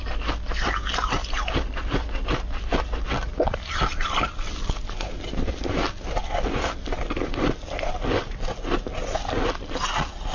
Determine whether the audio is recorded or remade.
recorded